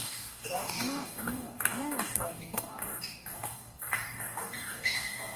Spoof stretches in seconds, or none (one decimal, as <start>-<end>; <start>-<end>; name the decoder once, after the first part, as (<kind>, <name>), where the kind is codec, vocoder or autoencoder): 0.0-5.4 (codec, DAC)